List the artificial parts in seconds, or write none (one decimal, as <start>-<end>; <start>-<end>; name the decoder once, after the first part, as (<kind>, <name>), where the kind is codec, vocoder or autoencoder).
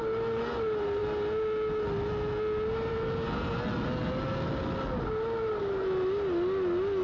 none